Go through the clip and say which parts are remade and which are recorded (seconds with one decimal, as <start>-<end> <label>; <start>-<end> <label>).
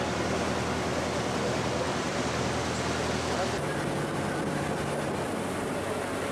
0.0-6.3 recorded